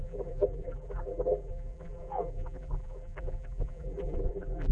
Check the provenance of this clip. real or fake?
fake